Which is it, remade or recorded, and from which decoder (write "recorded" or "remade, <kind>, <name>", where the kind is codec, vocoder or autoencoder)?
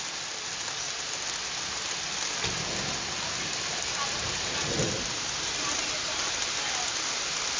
recorded